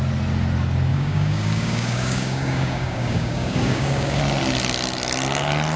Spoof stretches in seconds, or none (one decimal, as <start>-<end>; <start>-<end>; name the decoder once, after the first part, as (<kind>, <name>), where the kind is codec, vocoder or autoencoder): 0.9-4.2 (codec, DAC)